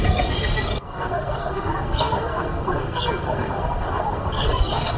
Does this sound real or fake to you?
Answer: fake